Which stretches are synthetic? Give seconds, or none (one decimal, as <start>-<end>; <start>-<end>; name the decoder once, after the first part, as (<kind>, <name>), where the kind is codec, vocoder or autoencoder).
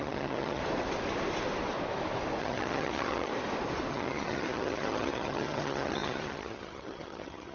0.0-0.6 (vocoder, HiFi-GAN); 2.4-3.3; 3.9-7.5